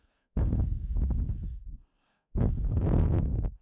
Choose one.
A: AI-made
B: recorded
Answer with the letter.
A